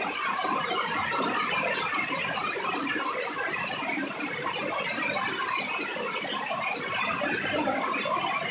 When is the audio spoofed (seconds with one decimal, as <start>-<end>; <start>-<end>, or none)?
0.4-4.6